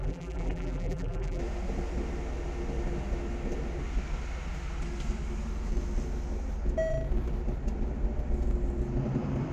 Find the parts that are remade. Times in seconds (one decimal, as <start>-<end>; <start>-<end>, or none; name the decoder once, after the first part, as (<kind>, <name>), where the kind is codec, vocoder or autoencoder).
0.0-1.4 (vocoder, BigVGAN v2)